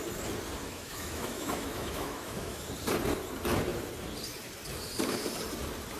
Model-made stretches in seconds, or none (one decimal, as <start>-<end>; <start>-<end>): 0.6-2.6